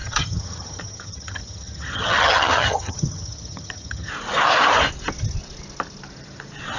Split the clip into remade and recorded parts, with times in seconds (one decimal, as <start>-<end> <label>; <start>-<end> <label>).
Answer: 0.0-4.1 remade; 4.1-6.8 recorded